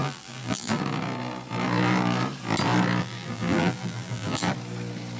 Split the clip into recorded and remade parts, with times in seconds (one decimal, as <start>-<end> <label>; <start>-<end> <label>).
0.0-0.8 remade; 0.8-3.0 recorded; 3.0-4.5 remade; 4.5-5.2 recorded